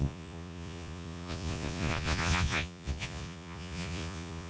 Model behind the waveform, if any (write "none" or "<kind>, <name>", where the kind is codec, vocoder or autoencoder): vocoder, Vocos